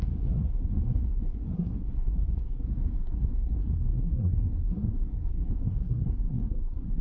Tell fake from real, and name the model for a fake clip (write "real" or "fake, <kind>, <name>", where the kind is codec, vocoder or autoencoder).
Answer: fake, codec, SNAC